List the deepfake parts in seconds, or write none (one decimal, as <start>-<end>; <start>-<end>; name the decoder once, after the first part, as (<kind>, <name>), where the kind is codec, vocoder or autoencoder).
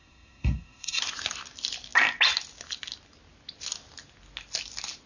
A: 0.0-1.0 (codec, SNAC)